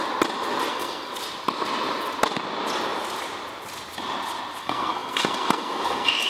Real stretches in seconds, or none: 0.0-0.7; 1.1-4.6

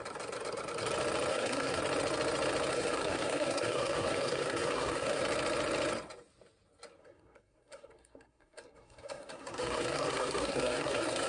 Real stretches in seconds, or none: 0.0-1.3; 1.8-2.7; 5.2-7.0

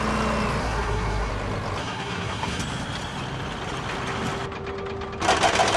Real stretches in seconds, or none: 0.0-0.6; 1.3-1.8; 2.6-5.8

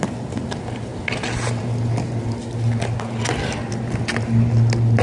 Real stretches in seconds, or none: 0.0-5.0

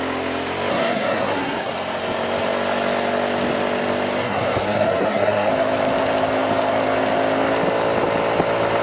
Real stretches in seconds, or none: 0.0-0.7; 1.7-4.2; 5.5-8.8

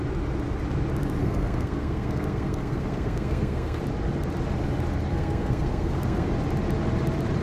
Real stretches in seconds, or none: 0.0-1.2; 3.8-5.1; 6.3-7.4

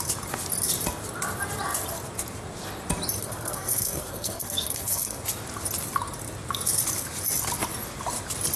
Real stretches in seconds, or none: 0.0-3.2; 5.2-8.6